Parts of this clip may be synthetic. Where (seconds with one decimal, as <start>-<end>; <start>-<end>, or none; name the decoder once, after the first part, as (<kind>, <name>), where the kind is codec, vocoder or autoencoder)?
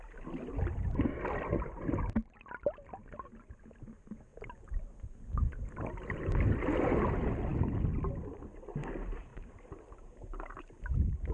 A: 9.3-10.6 (vocoder, BigVGAN v2)